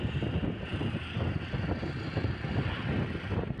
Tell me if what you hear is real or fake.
real